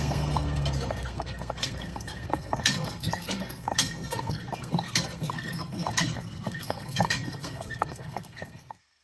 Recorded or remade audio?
remade